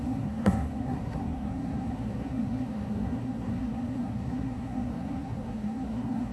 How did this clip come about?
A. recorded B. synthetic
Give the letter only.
B